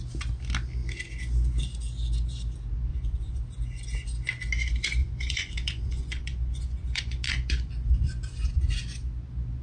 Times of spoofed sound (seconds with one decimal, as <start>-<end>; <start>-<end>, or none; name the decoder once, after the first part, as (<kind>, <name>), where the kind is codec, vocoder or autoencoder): 2.9-3.4 (vocoder, Vocos); 5.0-7.7